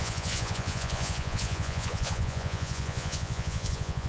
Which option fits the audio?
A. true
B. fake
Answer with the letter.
B